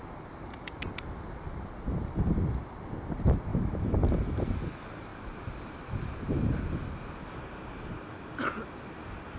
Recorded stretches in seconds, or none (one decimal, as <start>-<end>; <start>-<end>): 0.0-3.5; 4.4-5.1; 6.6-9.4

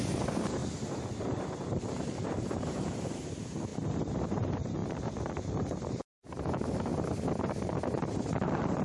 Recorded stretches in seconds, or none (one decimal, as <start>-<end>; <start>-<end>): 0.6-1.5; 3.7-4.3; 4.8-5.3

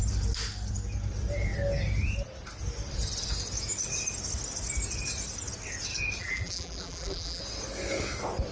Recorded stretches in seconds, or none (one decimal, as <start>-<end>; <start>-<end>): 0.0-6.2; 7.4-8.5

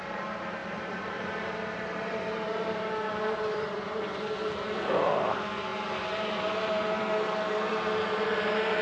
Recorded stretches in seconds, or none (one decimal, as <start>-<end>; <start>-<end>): 0.0-0.6; 4.2-8.8

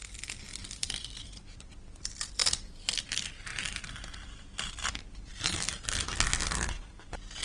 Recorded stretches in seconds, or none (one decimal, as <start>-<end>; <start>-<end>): 1.7-2.4; 2.9-3.5; 5.3-7.4